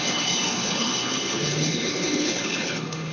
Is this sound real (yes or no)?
no